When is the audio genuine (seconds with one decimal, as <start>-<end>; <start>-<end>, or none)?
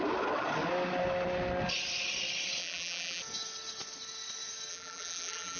0.0-2.6; 3.2-4.7